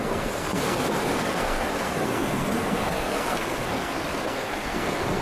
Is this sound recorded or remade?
remade